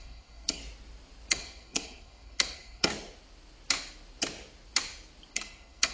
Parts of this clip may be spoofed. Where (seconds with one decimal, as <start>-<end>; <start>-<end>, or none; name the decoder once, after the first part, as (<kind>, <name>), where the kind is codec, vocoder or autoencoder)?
0.0-0.6 (codec, SNAC); 1.3-2.9; 5.3-5.9